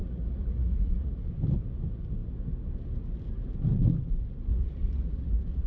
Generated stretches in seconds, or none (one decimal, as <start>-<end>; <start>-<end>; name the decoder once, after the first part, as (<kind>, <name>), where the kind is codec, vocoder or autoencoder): 0.0-1.2 (vocoder, Vocos); 4.5-5.7